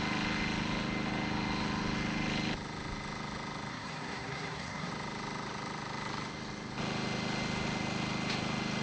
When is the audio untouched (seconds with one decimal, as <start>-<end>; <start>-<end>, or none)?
0.0-3.7; 4.9-8.8

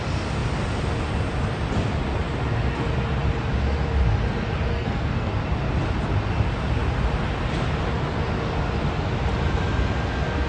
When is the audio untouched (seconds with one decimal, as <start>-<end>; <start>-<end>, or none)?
0.0-4.7; 5.3-10.5

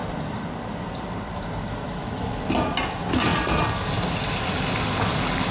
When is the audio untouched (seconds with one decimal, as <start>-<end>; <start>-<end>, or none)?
0.0-5.5

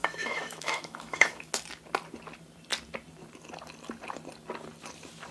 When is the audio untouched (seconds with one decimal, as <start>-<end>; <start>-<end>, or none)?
1.5-5.3

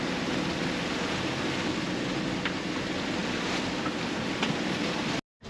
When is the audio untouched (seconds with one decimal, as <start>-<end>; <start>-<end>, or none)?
0.0-5.5

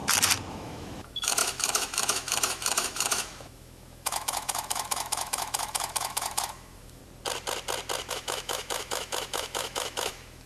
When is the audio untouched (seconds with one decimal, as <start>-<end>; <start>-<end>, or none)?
0.0-0.5; 7.0-8.1

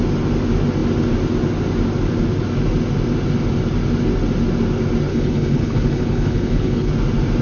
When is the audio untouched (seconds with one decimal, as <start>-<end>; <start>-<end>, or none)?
0.0-5.1; 6.9-7.4